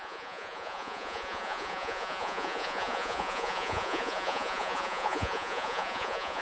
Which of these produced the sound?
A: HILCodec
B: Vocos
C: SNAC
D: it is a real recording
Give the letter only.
B